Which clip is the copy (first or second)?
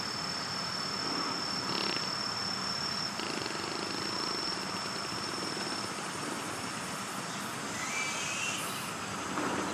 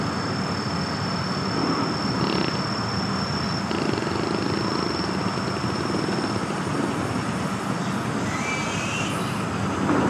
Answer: first